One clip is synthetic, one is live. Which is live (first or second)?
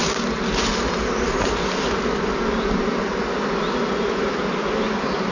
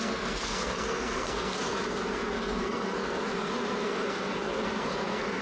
first